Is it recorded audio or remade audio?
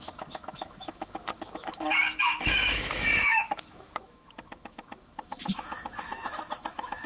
remade